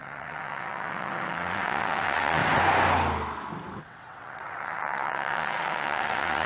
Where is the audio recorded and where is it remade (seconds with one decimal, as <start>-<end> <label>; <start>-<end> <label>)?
0.0-2.4 remade; 2.4-3.8 recorded; 3.8-6.5 remade